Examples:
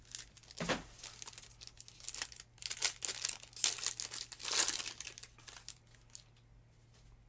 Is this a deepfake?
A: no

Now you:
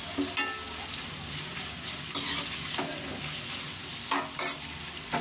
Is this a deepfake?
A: no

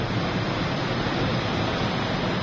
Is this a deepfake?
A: no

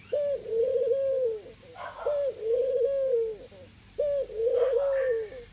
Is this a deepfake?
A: no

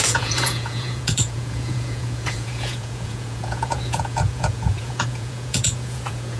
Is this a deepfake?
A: yes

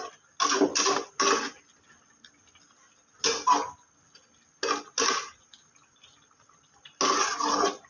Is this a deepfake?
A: no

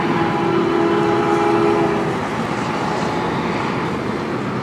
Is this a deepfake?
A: no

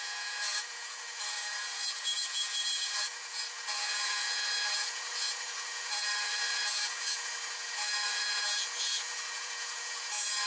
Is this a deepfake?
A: yes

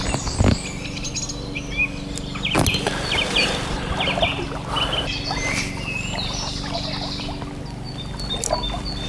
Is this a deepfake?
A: no